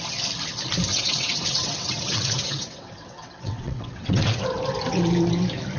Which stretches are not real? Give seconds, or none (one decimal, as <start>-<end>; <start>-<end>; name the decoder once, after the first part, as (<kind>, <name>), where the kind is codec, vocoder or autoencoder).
0.9-4.4 (vocoder, WaveNeXt)